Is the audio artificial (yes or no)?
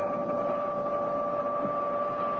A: no